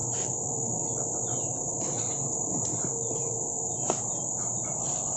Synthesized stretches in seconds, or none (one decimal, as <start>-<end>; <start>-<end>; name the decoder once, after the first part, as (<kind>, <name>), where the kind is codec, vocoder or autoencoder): 0.0-5.2 (vocoder, BigVGAN v2)